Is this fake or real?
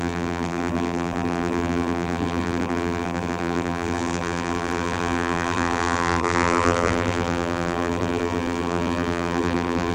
fake